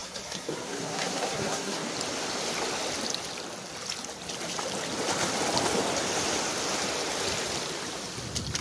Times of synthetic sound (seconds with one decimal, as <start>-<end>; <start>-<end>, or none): 0.0-1.8